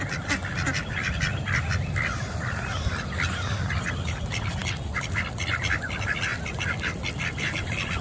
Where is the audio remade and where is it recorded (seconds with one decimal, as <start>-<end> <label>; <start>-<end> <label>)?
0.0-8.0 recorded

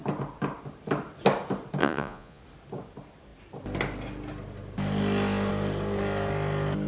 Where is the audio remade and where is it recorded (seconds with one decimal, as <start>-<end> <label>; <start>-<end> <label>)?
0.0-1.8 recorded; 1.8-2.4 remade; 2.4-6.9 recorded

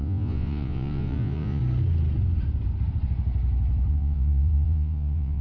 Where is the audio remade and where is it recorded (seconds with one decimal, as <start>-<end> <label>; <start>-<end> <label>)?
0.0-1.6 remade; 1.6-3.9 recorded; 3.9-5.4 remade

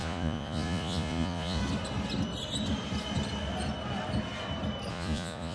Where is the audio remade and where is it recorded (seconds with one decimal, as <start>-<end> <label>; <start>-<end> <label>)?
0.0-1.6 remade; 1.6-4.9 recorded; 4.9-5.5 remade

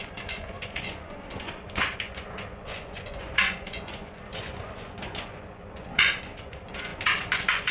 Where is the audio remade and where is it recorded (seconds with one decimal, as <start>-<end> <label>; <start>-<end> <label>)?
0.0-7.7 remade

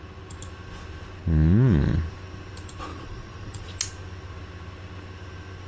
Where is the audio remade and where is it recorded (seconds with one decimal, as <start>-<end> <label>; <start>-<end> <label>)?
0.0-2.9 recorded; 2.9-3.7 remade; 3.7-5.7 recorded